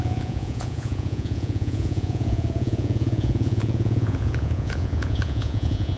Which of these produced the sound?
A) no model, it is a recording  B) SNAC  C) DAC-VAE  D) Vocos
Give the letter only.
D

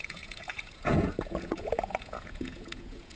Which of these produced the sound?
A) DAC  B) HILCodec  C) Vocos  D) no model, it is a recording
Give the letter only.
C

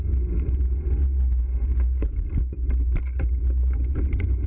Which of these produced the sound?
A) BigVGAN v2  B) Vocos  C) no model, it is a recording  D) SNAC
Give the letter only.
C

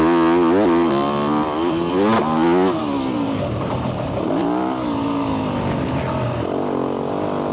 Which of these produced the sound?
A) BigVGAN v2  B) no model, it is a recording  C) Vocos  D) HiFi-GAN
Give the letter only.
B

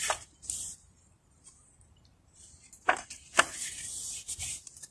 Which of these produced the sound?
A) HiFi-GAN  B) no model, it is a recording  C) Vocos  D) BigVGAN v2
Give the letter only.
D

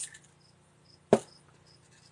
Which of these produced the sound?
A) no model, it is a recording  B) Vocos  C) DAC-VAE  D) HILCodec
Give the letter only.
A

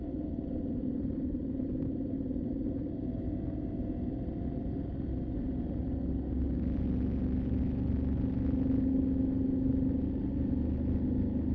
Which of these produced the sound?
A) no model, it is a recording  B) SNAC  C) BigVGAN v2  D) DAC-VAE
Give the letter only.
A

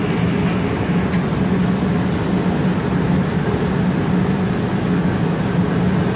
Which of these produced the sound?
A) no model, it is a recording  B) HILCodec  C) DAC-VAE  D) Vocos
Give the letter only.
A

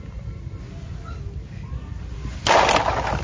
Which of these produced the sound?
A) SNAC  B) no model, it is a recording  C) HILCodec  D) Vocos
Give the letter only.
B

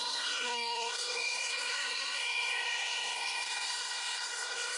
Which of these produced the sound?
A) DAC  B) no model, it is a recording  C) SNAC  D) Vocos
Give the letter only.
C